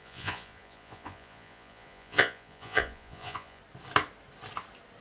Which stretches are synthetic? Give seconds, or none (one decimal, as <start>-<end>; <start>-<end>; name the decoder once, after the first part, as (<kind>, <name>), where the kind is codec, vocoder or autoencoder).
0.0-3.6 (vocoder, Vocos)